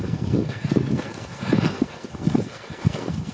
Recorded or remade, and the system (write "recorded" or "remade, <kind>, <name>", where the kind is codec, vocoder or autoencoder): remade, codec, SNAC